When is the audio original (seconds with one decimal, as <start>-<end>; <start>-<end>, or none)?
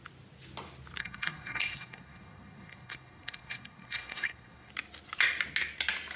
0.0-1.0; 4.7-6.2